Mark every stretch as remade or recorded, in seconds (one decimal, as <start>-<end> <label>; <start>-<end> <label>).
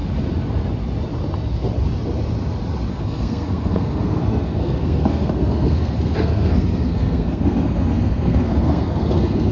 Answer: 0.0-2.9 recorded; 2.9-9.5 remade